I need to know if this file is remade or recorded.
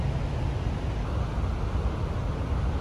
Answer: recorded